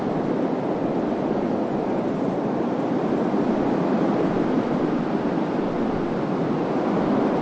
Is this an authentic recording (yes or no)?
yes